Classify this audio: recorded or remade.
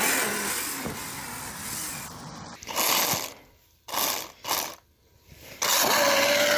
recorded